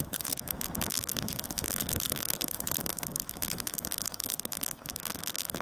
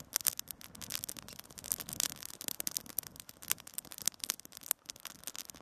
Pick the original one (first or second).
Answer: second